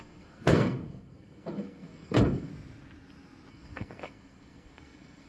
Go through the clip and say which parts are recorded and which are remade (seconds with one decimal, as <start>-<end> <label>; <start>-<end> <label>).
0.0-2.5 remade; 2.5-3.5 recorded; 3.5-5.3 remade